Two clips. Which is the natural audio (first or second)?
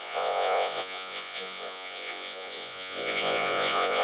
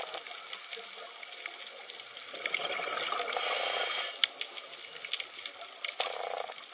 second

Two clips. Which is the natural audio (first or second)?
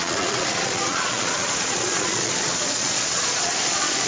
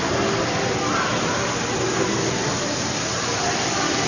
second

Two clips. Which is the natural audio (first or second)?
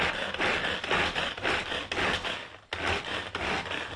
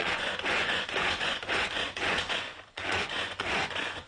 first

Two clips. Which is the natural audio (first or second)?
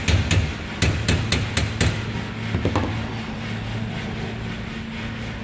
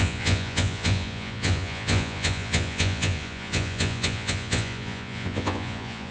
first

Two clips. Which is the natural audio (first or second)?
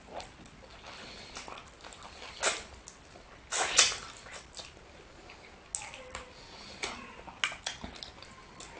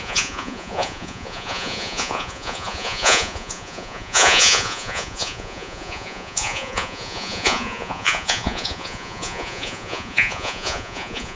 first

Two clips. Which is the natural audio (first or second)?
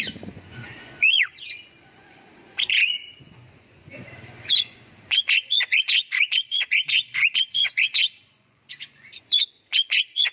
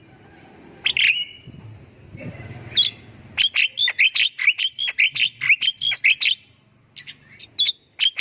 second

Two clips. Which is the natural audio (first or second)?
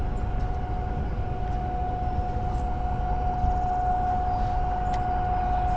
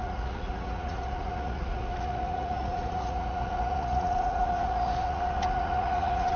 first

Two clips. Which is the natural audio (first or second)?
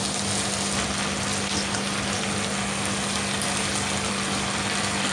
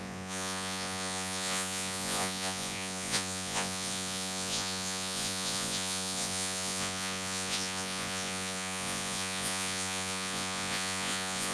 first